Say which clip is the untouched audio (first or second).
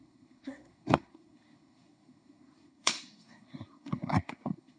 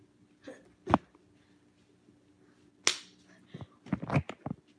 second